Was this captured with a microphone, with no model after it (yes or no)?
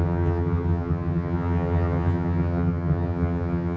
no